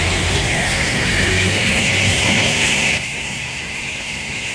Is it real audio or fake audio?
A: fake